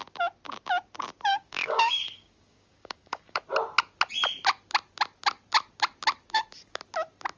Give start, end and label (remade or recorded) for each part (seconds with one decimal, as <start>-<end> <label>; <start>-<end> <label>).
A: 0.0-1.3 recorded; 1.3-3.4 remade; 3.4-7.4 recorded